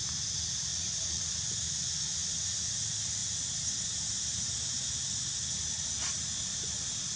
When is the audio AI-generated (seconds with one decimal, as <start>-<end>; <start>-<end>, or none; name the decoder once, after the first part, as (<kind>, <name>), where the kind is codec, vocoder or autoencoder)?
0.7-1.3 (vocoder, Vocos); 2.2-2.7